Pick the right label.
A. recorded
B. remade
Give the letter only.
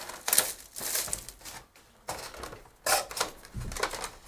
A